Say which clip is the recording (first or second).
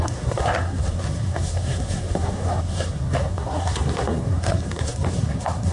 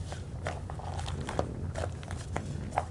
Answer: second